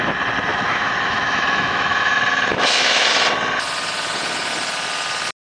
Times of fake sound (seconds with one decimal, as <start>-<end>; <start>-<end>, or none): 0.5-3.1